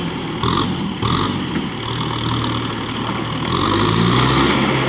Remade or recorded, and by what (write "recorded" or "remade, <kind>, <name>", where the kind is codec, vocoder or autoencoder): recorded